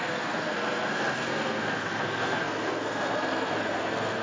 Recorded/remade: remade